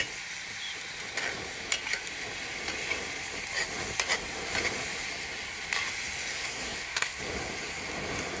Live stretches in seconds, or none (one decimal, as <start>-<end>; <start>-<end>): 0.0-6.3; 7.2-8.4